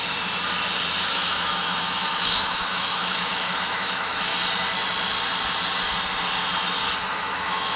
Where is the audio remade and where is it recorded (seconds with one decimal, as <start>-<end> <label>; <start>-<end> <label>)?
0.0-1.1 recorded; 1.1-4.3 remade; 4.3-7.2 recorded; 7.2-7.8 remade